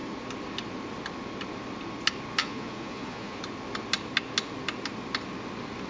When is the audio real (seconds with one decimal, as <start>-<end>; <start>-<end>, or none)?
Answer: 0.0-2.4; 3.4-5.9